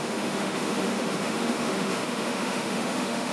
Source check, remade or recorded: remade